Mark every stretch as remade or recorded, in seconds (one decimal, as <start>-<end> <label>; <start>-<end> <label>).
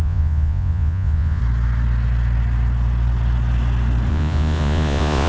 0.0-1.4 remade; 1.4-4.1 recorded; 4.1-5.3 remade